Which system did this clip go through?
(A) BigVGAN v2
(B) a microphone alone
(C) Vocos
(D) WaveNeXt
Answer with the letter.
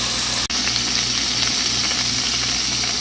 B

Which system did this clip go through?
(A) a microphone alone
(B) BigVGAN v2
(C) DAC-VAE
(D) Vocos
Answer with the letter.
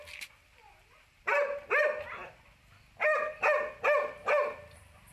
A